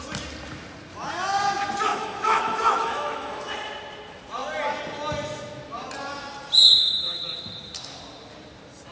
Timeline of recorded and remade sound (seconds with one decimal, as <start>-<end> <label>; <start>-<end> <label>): 0.0-1.9 recorded; 1.9-3.5 remade; 3.5-6.7 recorded; 6.7-7.2 remade; 7.2-8.9 recorded